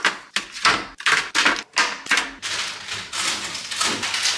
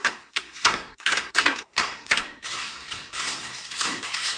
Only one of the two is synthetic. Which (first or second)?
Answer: second